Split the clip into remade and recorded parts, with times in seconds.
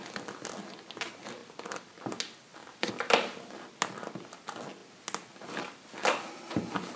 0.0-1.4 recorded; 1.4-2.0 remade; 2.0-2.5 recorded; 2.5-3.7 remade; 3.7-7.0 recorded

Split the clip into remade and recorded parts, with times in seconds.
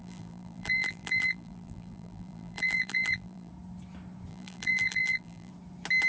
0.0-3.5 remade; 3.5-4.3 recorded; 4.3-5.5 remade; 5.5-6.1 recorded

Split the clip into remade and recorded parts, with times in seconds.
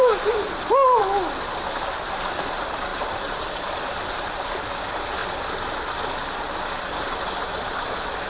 0.0-1.0 remade; 1.0-1.7 recorded; 1.7-5.2 remade; 5.2-6.8 recorded; 6.8-8.3 remade